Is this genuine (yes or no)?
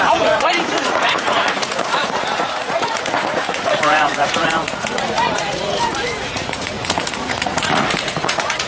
no